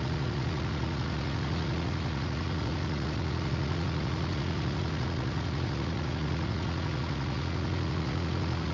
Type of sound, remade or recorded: remade